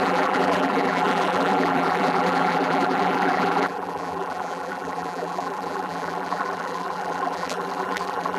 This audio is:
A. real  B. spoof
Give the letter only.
B